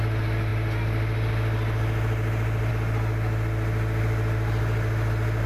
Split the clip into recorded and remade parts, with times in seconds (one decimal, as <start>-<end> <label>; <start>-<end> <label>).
0.0-5.5 recorded